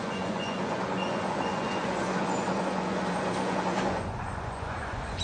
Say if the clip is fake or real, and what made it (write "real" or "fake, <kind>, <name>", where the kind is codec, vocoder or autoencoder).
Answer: fake, vocoder, Vocos